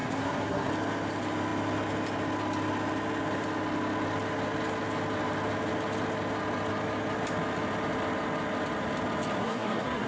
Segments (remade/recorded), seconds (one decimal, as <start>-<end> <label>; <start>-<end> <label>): 0.0-0.7 remade; 0.7-9.4 recorded; 9.4-10.1 remade